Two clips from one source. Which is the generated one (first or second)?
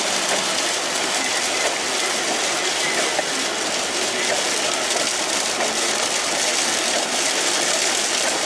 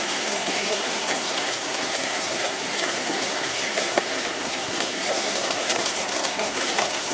second